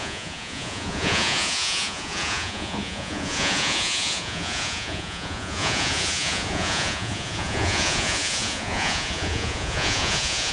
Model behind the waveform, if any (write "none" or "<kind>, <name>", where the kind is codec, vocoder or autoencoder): vocoder, Vocos